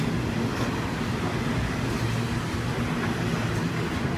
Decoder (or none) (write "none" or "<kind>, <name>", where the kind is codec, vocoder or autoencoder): none